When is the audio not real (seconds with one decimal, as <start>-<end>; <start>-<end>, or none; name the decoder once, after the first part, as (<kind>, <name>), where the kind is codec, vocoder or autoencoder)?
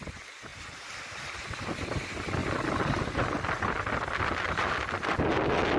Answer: 0.5-1.4 (vocoder, BigVGAN v2); 2.4-4.7